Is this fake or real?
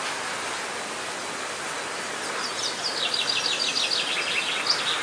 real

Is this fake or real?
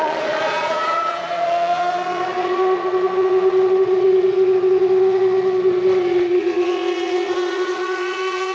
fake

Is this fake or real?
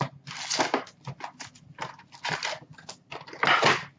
real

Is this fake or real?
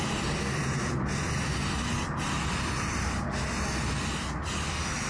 real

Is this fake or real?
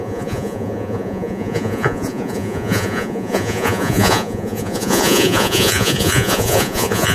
fake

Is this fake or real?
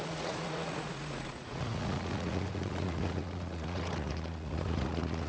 fake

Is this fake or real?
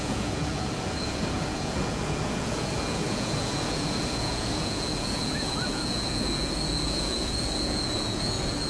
fake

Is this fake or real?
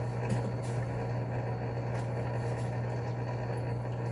real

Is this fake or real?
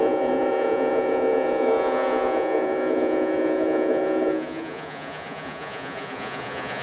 fake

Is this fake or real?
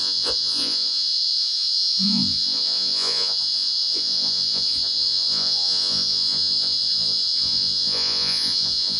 fake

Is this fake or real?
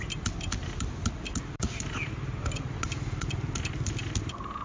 real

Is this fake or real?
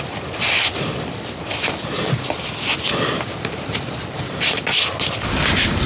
real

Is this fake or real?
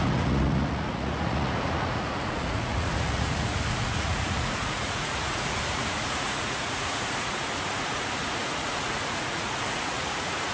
fake